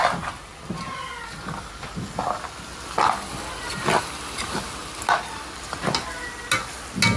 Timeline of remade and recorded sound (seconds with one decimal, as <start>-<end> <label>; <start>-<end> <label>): 0.0-7.2 recorded